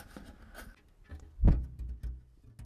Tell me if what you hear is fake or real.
real